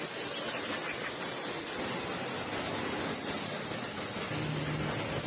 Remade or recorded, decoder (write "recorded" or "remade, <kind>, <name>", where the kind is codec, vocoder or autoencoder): recorded